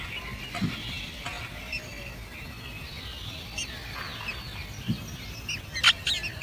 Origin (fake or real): real